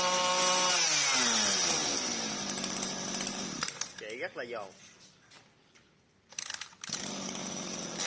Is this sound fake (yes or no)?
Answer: no